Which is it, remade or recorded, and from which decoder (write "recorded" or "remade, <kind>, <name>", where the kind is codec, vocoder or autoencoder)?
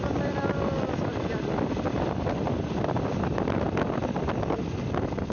recorded